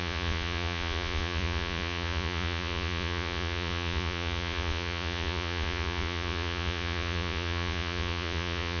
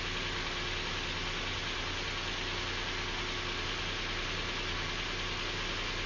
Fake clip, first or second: first